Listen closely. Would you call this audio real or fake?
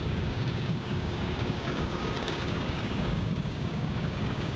fake